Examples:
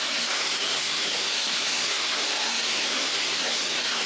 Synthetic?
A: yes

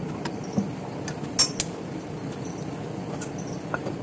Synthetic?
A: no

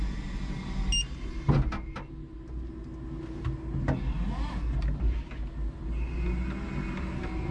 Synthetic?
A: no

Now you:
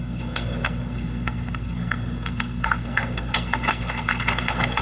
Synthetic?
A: yes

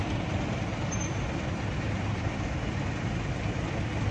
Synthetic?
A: no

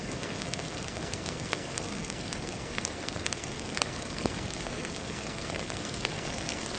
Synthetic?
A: yes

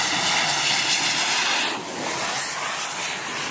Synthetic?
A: no